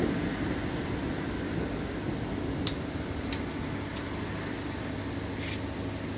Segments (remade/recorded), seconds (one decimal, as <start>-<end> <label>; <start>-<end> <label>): 0.0-6.2 recorded